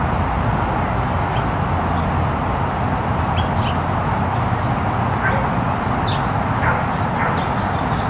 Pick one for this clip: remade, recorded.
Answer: recorded